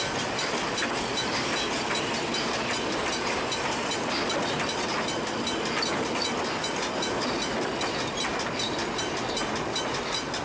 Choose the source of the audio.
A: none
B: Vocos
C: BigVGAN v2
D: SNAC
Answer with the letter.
A